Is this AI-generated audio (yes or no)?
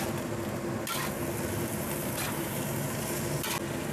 no